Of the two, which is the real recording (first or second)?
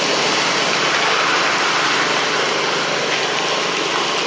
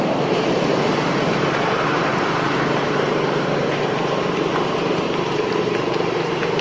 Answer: first